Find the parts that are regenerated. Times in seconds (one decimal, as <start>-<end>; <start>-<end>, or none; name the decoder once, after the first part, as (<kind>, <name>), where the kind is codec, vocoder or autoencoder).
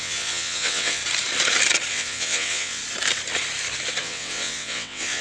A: 0.0-1.0 (vocoder, WaveNeXt); 1.9-2.8; 4.0-5.2